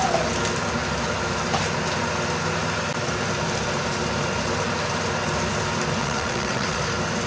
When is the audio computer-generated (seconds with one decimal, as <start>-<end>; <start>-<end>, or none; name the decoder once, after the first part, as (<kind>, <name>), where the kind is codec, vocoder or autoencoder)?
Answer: 6.0-6.8 (vocoder, WaveNeXt)